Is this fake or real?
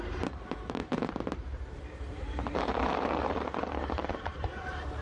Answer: fake